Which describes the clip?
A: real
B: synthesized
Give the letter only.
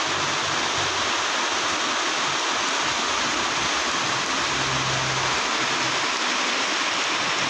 A